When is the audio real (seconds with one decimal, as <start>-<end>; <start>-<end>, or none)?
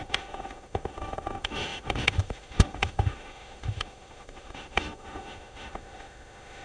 none